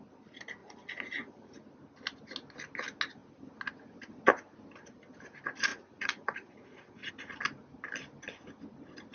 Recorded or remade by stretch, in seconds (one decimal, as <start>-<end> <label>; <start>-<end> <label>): 0.0-0.6 recorded; 0.6-1.6 remade; 1.6-5.7 recorded; 5.7-7.1 remade; 7.1-9.1 recorded